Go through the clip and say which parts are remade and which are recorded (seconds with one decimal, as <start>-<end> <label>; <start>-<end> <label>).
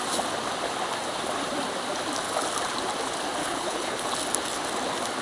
0.0-3.4 recorded; 3.4-4.1 remade; 4.1-5.2 recorded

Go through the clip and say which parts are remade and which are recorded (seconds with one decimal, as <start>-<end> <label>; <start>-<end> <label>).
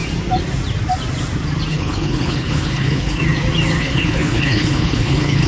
0.0-1.7 recorded; 1.7-3.2 remade; 3.2-3.8 recorded; 3.8-5.5 remade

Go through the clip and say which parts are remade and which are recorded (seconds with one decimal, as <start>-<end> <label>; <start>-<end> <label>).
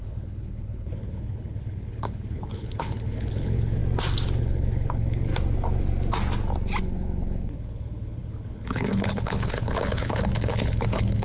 0.0-3.8 remade; 3.8-4.4 recorded; 4.4-5.3 remade; 5.3-6.8 recorded; 6.8-11.2 remade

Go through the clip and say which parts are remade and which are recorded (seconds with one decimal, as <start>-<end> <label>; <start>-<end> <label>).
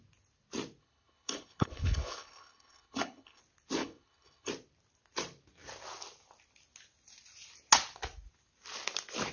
0.0-0.8 recorded; 0.8-3.4 remade; 3.4-3.8 recorded; 3.8-4.5 remade; 4.5-9.3 recorded